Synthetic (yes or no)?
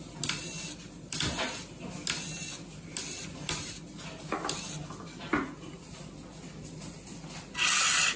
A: no